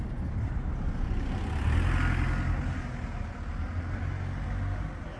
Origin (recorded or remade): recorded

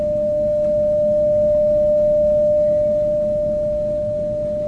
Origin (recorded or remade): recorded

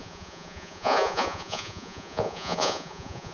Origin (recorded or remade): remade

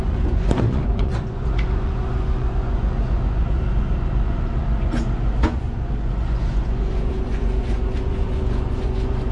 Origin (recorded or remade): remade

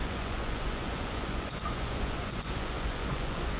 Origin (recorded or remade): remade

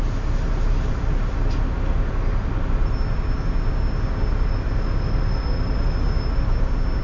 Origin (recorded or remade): recorded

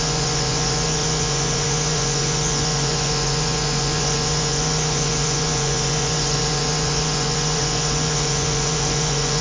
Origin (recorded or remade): remade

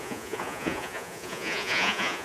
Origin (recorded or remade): remade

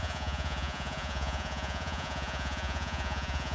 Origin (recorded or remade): remade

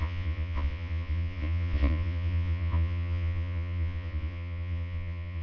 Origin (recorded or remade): remade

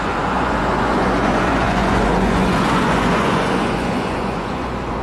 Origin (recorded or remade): remade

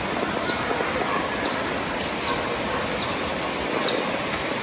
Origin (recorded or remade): recorded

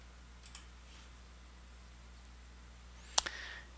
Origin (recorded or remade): recorded